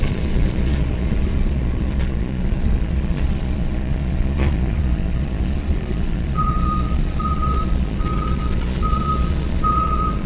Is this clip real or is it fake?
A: fake